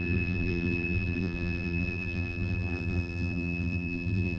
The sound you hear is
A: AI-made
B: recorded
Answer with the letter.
A